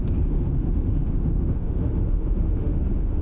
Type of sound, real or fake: fake